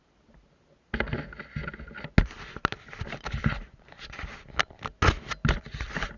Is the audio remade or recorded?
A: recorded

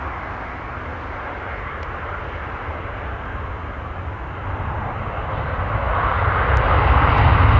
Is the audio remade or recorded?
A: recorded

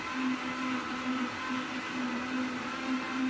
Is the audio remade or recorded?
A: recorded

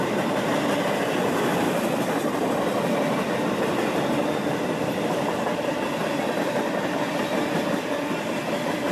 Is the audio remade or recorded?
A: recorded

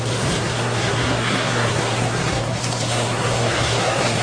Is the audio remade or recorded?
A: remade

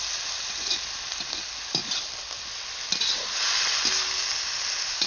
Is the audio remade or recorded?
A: recorded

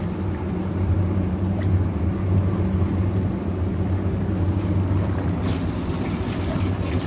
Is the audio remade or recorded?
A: recorded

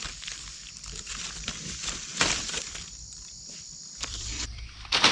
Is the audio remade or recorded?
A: remade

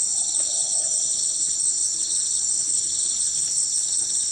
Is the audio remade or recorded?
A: remade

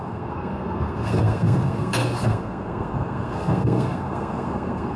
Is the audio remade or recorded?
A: remade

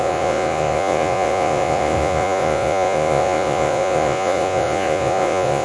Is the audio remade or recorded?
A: remade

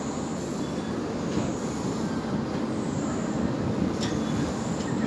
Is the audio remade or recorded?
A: recorded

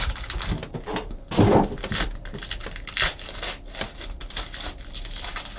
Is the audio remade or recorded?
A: recorded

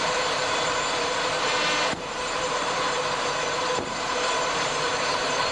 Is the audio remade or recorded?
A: remade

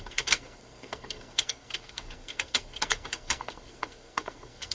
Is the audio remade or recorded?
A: remade